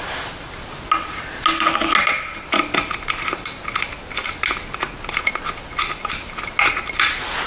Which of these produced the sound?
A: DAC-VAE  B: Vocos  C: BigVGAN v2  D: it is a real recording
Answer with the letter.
D